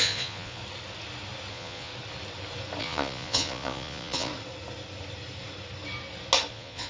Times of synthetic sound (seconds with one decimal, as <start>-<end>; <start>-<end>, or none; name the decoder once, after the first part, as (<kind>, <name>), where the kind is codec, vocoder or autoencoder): 0.0-0.6 (vocoder, Vocos); 1.5-1.9; 2.8-4.3; 6.5-6.9